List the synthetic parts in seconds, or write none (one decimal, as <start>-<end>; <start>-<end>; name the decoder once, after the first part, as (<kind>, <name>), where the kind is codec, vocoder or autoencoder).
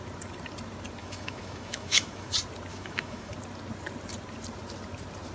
1.0-2.3 (autoencoder, DAC-VAE); 2.7-3.3